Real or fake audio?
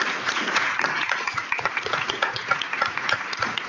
fake